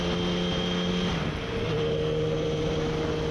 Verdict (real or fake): real